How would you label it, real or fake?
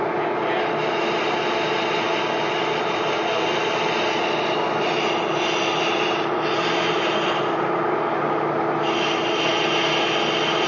real